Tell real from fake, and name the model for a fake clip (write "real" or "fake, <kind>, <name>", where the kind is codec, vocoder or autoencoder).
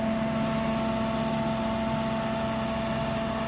real